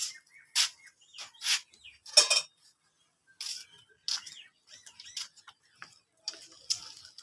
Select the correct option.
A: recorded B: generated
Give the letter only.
A